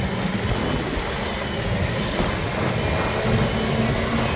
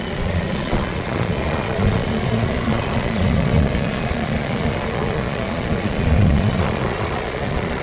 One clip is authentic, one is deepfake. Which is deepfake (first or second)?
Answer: second